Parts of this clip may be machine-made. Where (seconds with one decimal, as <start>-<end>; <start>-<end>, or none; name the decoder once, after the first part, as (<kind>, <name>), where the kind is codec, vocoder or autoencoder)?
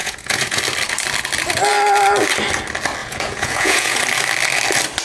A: 0.0-0.6 (vocoder, Vocos); 3.0-4.0